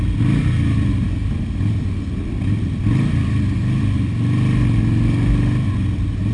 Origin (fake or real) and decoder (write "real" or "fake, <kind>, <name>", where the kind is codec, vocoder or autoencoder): real